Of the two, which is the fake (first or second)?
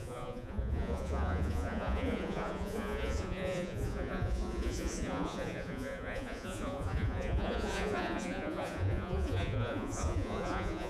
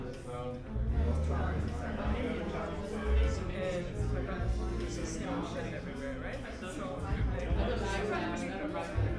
first